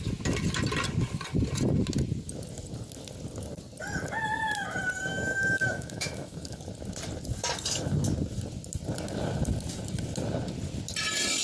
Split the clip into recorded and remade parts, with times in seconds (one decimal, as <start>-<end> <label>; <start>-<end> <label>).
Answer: 0.0-5.1 recorded; 5.1-6.6 remade; 6.6-11.4 recorded